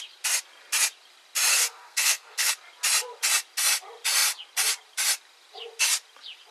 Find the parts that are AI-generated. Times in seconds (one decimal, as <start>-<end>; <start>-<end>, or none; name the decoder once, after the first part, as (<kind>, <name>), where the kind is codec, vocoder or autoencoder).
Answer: 1.5-2.5 (codec, SNAC)